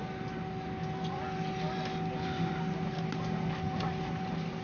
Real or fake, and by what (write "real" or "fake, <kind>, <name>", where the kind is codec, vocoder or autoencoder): real